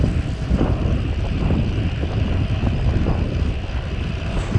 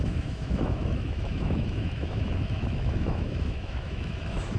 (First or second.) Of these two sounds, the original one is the first